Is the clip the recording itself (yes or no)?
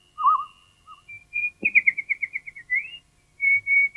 yes